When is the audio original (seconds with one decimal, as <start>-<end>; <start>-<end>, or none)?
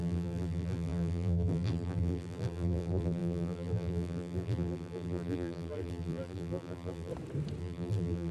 7.1-7.6